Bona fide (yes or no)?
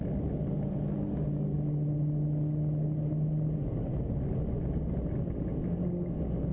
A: yes